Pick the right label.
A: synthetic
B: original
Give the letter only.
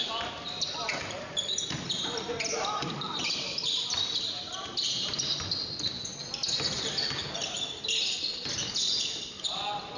B